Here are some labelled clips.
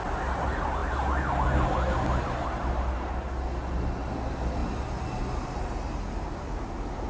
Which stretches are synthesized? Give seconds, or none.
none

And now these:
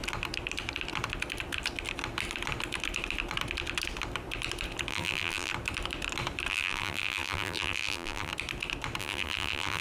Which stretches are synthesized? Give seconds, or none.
4.9-5.5 (vocoder, BigVGAN v2); 6.5-8.3; 9.0-9.8

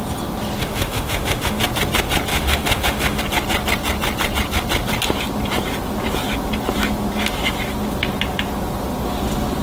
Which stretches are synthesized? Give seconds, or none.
0.6-1.6 (autoencoder, DAC-VAE); 2.3-3.2

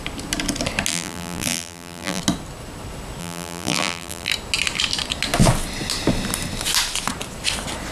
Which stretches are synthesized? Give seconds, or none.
0.9-2.2 (vocoder, BigVGAN v2); 3.2-4.3

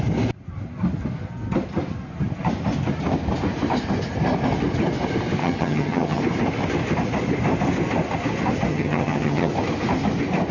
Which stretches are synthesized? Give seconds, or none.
5.4-6.2 (vocoder, HiFi-GAN); 8.7-9.5

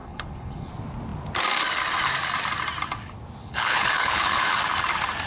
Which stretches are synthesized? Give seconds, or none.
0.0-0.7 (codec, HILCodec); 3.4-4.6

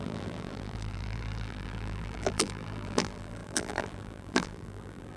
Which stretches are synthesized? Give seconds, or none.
0.0-5.2 (vocoder, BigVGAN v2)